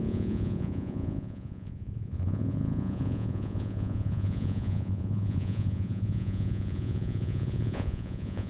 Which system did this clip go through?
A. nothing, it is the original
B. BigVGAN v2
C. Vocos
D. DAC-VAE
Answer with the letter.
C